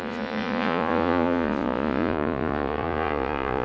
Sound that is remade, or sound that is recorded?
remade